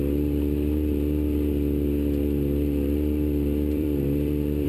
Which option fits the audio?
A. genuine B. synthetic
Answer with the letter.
B